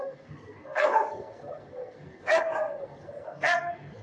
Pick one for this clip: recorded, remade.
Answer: remade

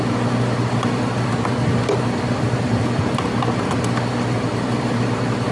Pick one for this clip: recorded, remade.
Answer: recorded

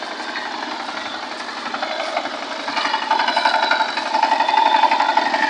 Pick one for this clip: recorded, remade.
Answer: recorded